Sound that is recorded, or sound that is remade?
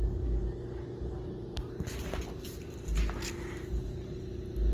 recorded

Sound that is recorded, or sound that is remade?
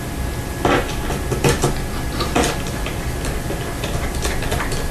recorded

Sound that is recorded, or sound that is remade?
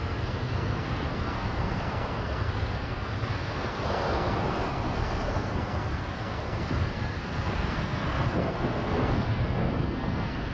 remade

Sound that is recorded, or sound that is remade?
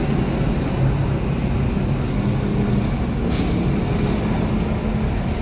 recorded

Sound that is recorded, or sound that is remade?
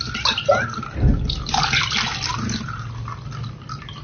recorded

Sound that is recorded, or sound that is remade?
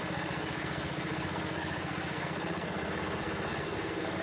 remade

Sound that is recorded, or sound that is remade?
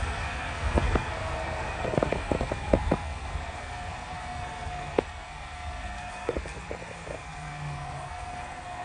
remade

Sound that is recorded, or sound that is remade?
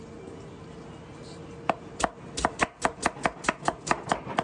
recorded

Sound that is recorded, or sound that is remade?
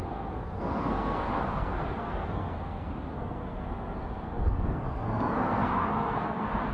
remade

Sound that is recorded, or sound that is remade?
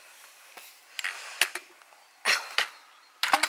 recorded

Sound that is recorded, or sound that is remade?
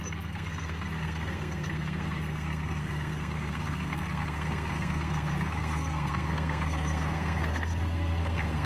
remade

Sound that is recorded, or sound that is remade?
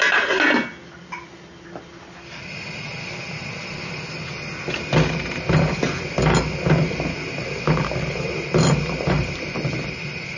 recorded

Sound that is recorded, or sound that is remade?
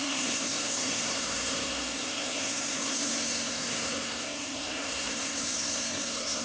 remade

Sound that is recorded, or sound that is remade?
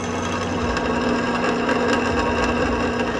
recorded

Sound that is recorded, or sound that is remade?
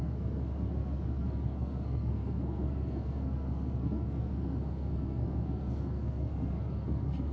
remade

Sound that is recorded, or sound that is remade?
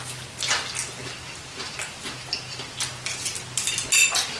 recorded